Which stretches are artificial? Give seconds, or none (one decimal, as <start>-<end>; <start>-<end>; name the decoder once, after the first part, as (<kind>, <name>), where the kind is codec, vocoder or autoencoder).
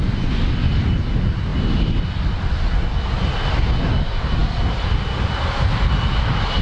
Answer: none